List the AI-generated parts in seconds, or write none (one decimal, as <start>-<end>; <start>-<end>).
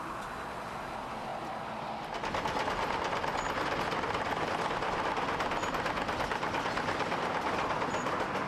none